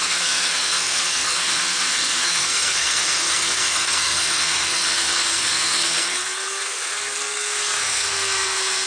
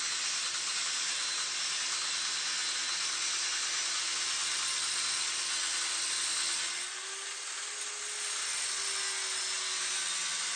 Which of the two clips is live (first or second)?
second